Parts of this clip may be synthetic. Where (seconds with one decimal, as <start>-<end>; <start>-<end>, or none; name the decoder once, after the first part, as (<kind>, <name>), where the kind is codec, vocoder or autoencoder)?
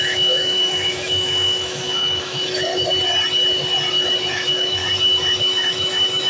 0.0-2.7 (autoencoder, DAC-VAE); 4.3-4.8; 5.4-6.3